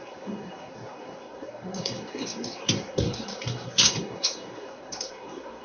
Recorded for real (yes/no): no